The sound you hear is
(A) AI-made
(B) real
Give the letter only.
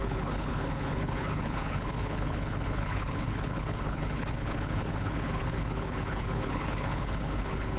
A